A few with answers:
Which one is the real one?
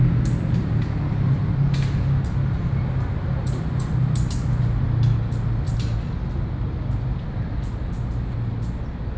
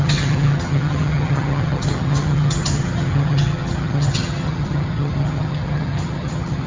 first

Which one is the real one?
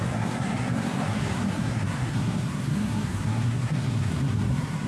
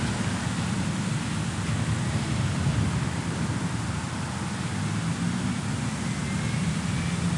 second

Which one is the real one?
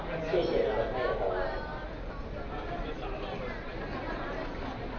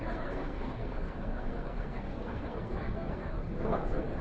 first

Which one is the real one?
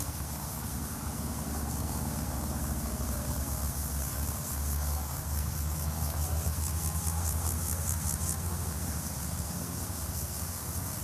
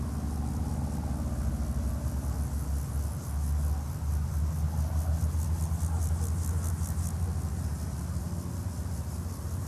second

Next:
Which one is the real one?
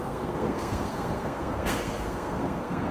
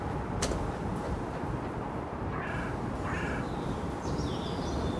second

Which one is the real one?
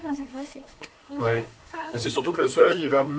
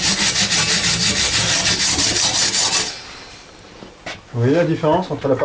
second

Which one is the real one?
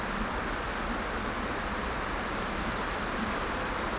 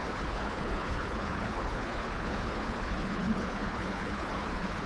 first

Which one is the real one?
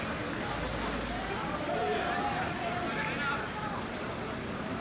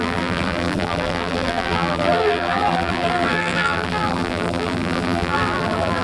first